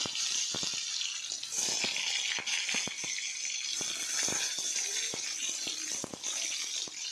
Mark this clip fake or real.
real